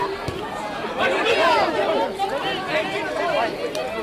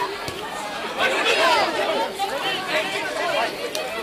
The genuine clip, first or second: first